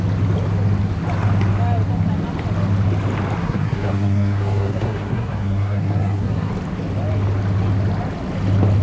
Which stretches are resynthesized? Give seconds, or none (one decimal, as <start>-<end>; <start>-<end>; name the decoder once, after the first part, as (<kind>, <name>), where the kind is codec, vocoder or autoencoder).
3.4-6.5 (codec, SNAC)